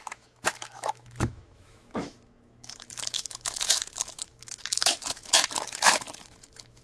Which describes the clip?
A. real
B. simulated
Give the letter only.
B